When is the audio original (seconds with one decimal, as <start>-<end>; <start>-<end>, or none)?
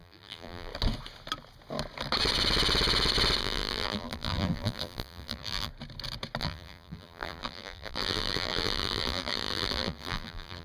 0.7-3.4; 5.7-6.4